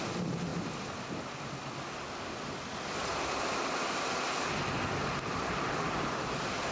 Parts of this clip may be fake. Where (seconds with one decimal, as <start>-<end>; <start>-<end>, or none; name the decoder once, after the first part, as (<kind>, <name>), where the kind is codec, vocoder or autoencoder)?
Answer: none